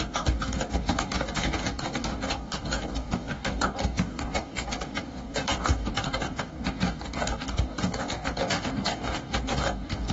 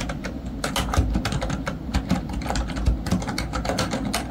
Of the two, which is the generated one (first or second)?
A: first